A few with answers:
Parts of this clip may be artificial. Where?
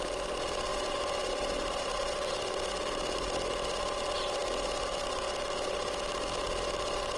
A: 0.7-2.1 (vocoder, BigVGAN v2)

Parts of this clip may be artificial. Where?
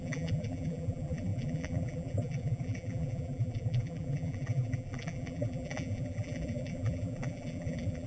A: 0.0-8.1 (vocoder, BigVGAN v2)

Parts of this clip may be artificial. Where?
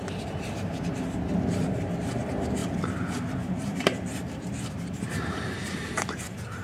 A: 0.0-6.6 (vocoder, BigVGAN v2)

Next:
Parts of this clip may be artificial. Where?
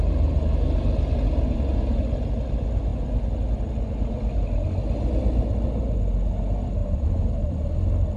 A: 6.8-7.5 (vocoder, BigVGAN v2)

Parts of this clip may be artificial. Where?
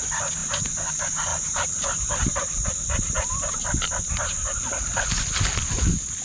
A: 1.3-3.6 (vocoder, BigVGAN v2)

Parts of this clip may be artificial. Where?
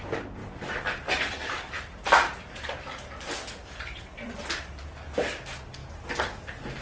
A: 0.4-1.8 (vocoder, BigVGAN v2); 3.6-4.6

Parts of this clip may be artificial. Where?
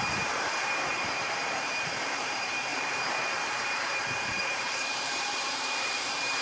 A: 0.0-6.4 (vocoder, BigVGAN v2)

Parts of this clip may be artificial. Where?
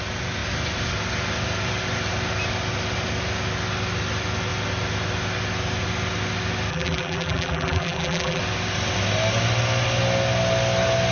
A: 6.7-8.4 (vocoder, BigVGAN v2)